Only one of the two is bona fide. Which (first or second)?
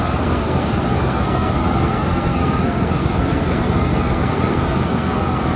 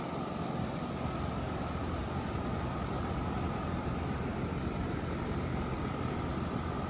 second